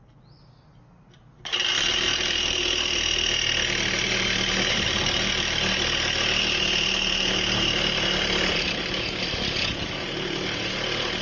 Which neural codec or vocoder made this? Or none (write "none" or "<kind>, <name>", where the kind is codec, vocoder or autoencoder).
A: none